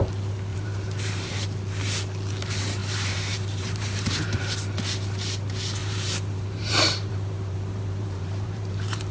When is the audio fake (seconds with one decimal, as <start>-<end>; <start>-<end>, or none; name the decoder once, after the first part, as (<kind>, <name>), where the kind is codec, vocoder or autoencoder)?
0.5-1.3 (vocoder, BigVGAN v2); 2.8-4.5; 5.8-9.1

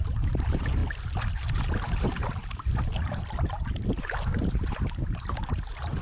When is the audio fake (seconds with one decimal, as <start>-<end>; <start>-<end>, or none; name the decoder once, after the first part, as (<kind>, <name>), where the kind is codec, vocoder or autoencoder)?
0.0-0.8 (vocoder, BigVGAN v2); 1.3-6.0

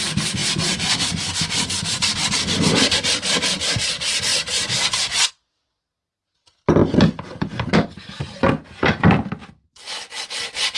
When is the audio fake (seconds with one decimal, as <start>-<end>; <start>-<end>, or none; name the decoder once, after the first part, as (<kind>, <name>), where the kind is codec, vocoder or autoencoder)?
none

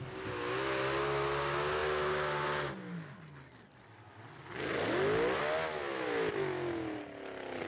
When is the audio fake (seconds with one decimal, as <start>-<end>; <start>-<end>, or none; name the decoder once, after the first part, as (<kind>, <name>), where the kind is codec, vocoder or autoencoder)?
none

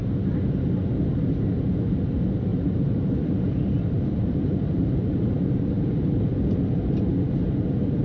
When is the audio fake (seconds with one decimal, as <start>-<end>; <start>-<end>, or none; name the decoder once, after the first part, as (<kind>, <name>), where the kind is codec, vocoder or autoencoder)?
2.5-7.1 (vocoder, BigVGAN v2)

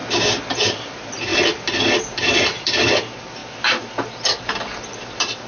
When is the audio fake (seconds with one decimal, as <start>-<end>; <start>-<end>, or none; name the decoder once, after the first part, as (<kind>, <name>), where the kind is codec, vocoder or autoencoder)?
0.5-1.3 (vocoder, BigVGAN v2); 2.2-3.4; 4.1-5.5